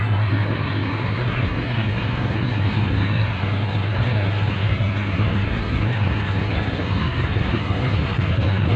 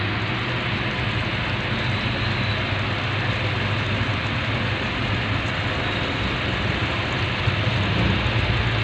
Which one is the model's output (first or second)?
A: first